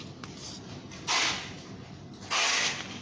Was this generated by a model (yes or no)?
no